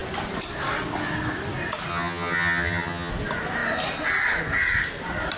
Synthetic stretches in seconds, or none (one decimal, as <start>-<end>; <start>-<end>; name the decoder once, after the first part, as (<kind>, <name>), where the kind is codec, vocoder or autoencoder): 1.9-3.1 (vocoder, HiFi-GAN)